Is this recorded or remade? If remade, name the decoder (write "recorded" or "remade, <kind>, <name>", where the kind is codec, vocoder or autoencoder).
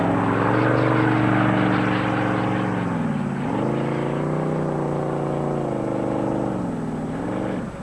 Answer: recorded